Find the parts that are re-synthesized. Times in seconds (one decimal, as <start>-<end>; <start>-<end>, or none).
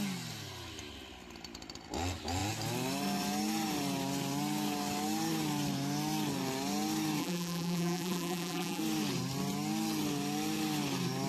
7.2-8.8